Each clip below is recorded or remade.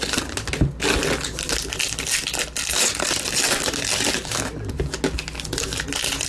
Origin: recorded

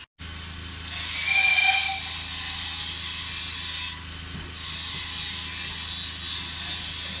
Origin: recorded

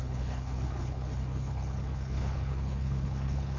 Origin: remade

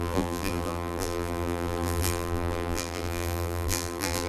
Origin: remade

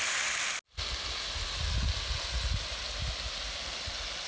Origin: recorded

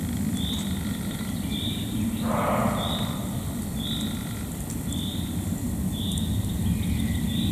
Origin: recorded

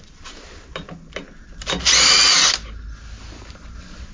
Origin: recorded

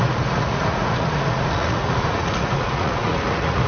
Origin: remade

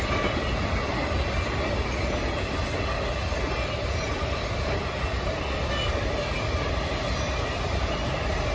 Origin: recorded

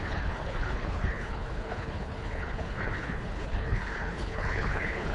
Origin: remade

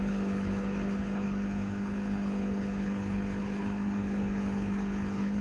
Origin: remade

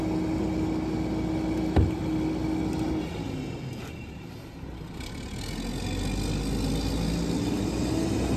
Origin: recorded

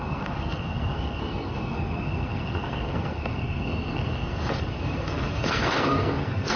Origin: remade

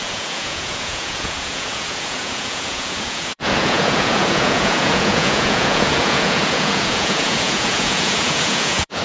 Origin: remade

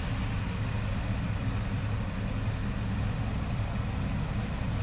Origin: recorded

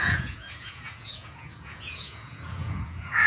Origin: remade